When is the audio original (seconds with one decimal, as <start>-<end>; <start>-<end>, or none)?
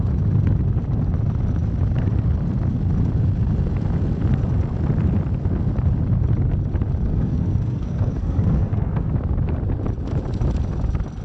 0.0-7.1; 9.1-11.2